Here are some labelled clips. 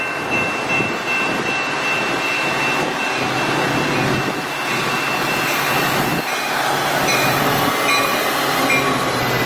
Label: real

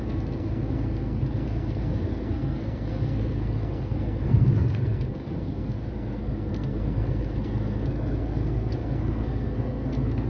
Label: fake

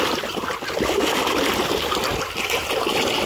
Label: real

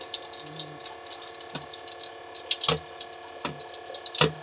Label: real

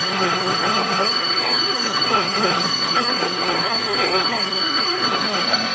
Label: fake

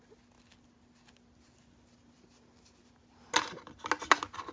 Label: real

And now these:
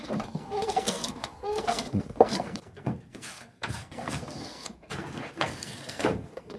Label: fake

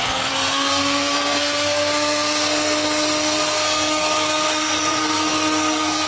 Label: fake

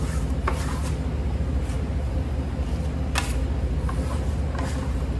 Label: real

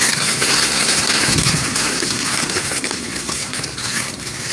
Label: fake